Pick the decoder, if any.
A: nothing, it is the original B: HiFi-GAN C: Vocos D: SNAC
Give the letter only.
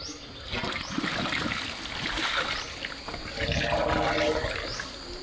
A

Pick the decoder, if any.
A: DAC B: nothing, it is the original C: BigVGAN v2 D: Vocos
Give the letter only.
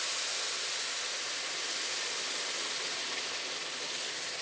B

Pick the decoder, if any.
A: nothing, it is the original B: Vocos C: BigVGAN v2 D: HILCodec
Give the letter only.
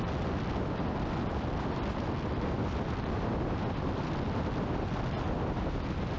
A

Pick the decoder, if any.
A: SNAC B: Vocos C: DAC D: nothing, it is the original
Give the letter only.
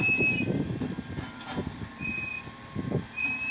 D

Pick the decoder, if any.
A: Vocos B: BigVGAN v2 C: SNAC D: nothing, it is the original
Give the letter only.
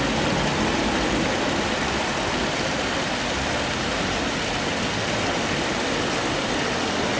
D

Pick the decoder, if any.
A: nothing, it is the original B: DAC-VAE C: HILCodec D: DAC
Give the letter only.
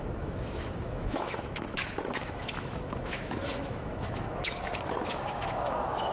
B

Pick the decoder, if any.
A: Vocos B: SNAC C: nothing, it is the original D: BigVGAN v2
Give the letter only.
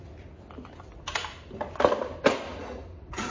C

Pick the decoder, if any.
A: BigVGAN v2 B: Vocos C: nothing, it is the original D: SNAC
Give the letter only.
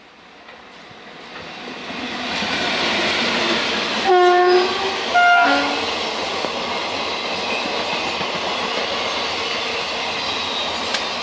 C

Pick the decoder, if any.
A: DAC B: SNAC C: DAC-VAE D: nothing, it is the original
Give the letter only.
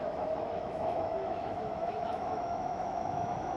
C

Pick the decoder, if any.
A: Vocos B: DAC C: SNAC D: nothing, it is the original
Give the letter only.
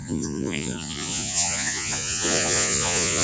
A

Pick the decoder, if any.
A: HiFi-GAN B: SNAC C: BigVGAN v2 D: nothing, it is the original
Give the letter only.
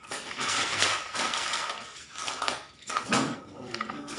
B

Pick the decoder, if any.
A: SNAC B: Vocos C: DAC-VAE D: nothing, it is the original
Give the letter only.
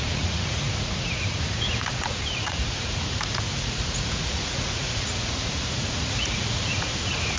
B